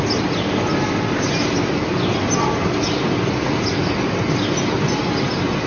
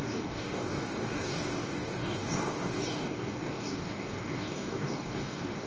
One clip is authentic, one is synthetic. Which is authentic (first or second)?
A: first